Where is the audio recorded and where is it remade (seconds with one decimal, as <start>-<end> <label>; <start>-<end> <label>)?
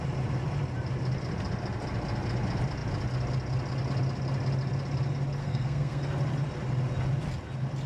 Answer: 0.0-5.4 recorded; 5.4-6.0 remade; 6.0-7.9 recorded